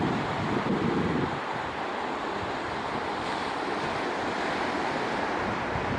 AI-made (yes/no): no